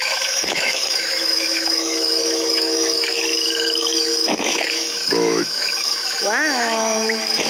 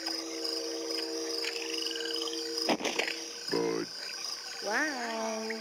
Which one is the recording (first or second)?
second